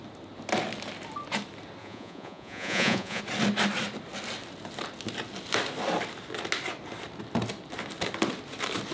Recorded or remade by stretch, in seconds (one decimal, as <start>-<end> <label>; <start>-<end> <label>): 0.0-1.8 recorded; 1.8-3.2 remade; 3.2-8.9 recorded